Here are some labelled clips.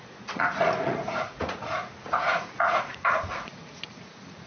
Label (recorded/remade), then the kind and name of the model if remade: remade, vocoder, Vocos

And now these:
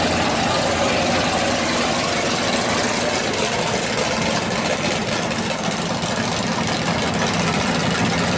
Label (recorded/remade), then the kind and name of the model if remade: recorded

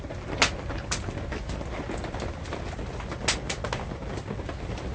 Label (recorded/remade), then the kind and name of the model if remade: recorded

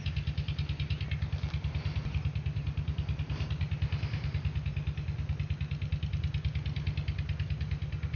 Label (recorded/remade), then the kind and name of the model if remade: recorded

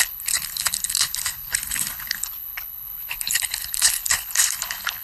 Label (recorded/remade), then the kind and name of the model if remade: remade, codec, HILCodec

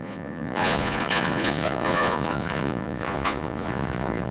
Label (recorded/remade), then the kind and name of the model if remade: remade, vocoder, Vocos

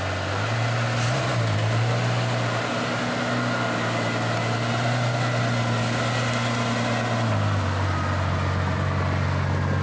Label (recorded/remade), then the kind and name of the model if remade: recorded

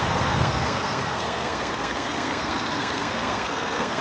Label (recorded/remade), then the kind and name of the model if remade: remade, codec, SNAC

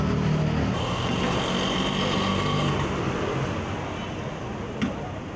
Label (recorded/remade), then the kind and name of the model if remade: recorded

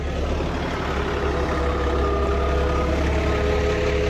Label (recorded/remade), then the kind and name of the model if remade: recorded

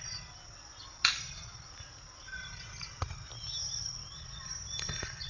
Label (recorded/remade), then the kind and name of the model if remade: recorded